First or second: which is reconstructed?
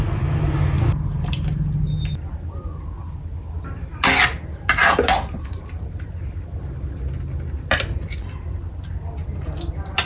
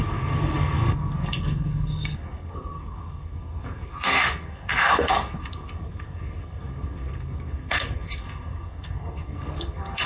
second